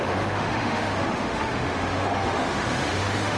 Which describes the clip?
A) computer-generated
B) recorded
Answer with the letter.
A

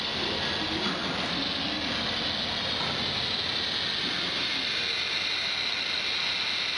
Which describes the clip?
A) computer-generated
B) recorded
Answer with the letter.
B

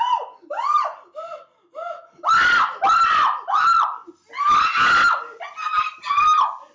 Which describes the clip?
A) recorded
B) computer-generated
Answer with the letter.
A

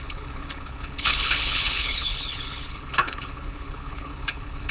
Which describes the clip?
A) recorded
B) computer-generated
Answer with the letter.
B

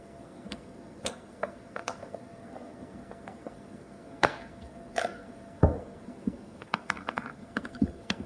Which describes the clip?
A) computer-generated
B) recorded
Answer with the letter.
A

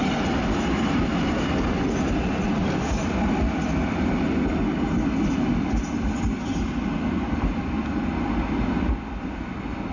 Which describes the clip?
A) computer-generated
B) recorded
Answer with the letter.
B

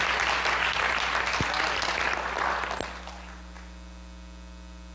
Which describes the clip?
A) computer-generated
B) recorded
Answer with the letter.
B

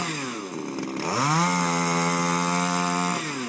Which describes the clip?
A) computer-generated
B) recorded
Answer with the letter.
B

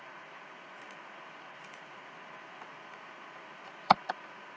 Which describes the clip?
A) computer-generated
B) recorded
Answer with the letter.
A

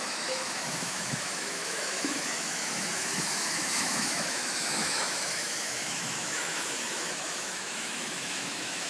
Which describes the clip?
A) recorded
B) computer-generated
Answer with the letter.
B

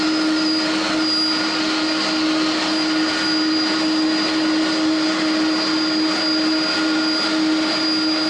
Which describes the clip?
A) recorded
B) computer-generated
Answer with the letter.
A